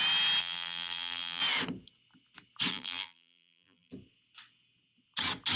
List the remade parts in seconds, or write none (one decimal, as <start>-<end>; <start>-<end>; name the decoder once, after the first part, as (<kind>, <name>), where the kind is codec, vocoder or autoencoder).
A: 0.4-1.4 (vocoder, BigVGAN v2); 2.7-3.9